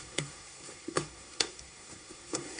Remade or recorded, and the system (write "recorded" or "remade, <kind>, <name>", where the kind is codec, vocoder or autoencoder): remade, codec, SNAC